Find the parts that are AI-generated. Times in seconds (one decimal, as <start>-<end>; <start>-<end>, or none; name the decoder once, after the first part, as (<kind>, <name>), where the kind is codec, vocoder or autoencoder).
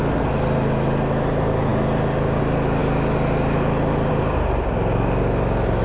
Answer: none